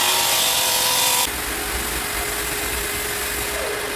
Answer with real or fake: real